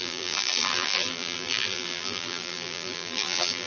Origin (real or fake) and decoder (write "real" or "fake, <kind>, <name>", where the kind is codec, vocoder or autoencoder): fake, vocoder, BigVGAN v2